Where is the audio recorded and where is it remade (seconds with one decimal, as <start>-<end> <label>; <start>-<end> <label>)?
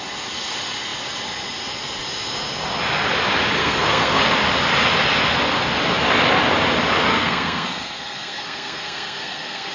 0.0-3.6 recorded; 3.6-4.2 remade; 4.2-7.1 recorded; 7.1-9.7 remade